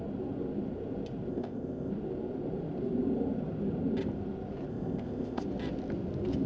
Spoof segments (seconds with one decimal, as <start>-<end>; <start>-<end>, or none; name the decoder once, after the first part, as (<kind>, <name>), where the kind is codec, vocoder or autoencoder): 1.3-1.9 (codec, ZipCodec); 4.7-5.4